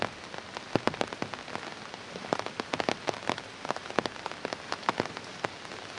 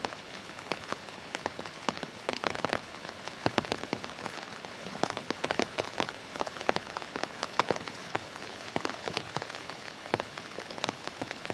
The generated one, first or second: second